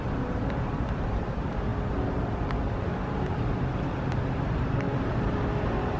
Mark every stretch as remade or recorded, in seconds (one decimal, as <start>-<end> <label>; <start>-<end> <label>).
0.0-6.0 recorded